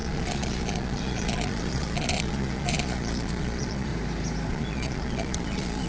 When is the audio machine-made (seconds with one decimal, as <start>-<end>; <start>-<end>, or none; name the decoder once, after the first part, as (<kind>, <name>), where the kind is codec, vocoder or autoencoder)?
0.0-3.9 (vocoder, Vocos); 4.5-5.9